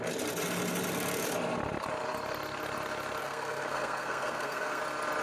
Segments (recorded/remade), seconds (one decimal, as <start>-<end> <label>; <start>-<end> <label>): 0.0-3.2 recorded; 3.2-4.8 remade; 4.8-5.2 recorded